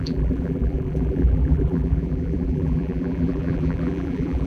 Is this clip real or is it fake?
fake